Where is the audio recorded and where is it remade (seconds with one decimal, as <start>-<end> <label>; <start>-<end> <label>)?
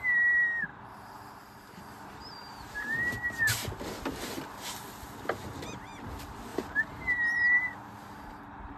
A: 0.0-0.7 recorded; 0.7-2.7 remade; 2.7-6.5 recorded; 6.5-8.4 remade; 8.4-8.8 recorded